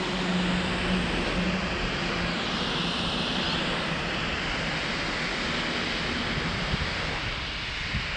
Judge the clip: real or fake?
real